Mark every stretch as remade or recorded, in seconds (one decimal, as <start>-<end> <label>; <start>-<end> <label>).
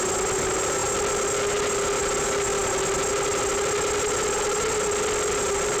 0.0-5.8 recorded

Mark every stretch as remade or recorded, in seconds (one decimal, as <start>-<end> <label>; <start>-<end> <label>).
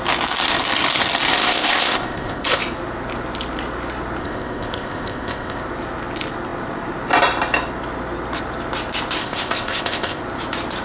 0.0-1.3 recorded; 1.3-2.6 remade; 2.6-4.2 recorded; 4.2-5.6 remade; 5.6-9.2 recorded; 9.2-10.2 remade; 10.2-10.8 recorded